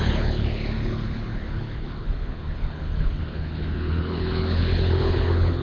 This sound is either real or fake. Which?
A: fake